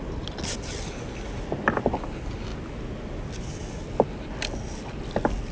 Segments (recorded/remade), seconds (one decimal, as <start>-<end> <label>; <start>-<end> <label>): 0.0-5.5 recorded